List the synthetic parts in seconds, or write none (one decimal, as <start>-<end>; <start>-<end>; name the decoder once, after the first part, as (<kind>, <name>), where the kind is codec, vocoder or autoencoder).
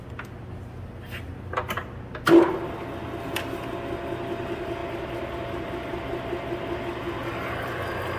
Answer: none